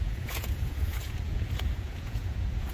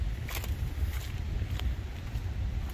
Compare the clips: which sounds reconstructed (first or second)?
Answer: first